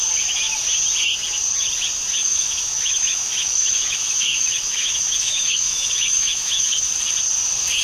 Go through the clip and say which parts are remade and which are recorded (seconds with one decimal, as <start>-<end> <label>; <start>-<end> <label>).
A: 0.0-2.2 recorded; 2.2-6.9 remade; 6.9-7.8 recorded